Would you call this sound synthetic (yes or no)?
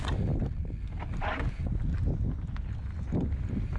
no